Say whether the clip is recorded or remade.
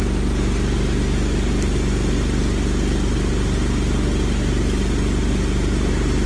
recorded